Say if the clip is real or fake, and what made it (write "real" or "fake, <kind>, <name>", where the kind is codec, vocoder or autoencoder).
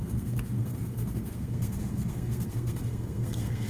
fake, codec, SNAC